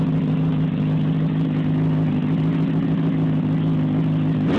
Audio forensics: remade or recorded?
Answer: recorded